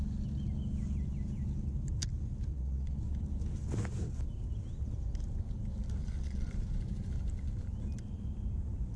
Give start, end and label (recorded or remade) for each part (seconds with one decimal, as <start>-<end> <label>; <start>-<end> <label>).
0.0-2.5 recorded; 2.5-3.0 remade; 3.0-6.0 recorded; 6.0-6.5 remade; 6.5-9.0 recorded

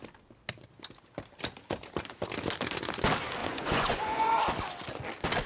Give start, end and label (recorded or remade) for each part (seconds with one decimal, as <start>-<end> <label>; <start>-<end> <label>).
0.0-3.4 recorded; 3.4-4.4 remade; 4.4-5.5 recorded

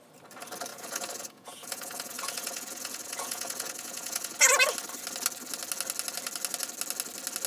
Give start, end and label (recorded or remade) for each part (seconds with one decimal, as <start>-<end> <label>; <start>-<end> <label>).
0.0-0.7 recorded; 0.7-4.4 remade; 4.4-7.5 recorded

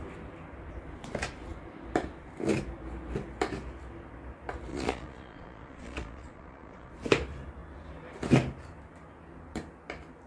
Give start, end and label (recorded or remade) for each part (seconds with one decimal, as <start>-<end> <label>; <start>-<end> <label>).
0.0-4.7 recorded; 4.7-6.9 remade; 6.9-10.3 recorded

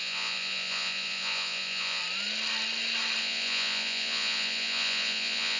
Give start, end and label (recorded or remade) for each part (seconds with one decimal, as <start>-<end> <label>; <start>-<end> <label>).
0.0-2.0 remade; 2.0-3.2 recorded; 3.2-5.6 remade